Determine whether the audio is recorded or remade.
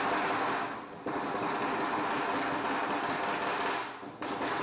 recorded